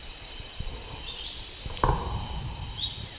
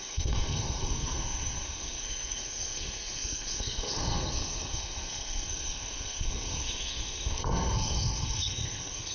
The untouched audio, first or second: first